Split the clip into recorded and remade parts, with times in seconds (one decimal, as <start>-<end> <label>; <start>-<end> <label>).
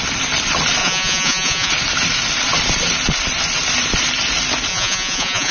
0.0-0.8 recorded; 0.8-1.7 remade; 1.7-4.7 recorded; 4.7-5.5 remade